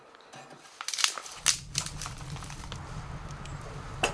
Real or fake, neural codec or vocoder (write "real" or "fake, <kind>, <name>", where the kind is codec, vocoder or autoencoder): real